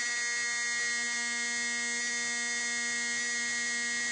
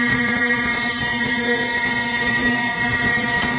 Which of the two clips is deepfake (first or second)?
second